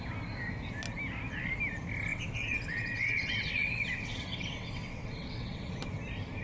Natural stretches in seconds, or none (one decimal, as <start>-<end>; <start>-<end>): 0.0-2.1; 5.7-6.4